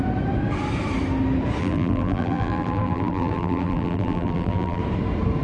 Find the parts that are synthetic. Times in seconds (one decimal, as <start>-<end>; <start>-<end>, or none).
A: 1.6-4.8